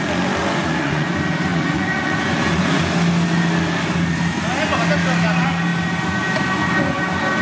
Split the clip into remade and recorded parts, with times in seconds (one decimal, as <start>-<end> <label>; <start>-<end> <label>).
0.0-0.4 recorded; 0.4-1.1 remade; 1.1-1.5 recorded; 1.5-2.8 remade; 2.8-7.4 recorded